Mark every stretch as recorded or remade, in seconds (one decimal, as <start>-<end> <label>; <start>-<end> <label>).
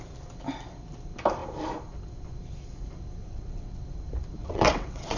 0.0-3.2 recorded; 3.2-3.8 remade; 3.8-4.4 recorded; 4.4-5.2 remade